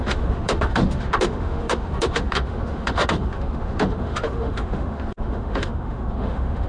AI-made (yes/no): yes